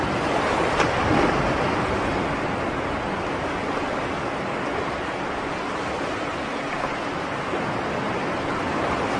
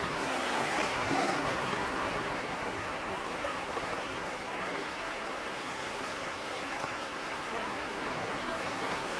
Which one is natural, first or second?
first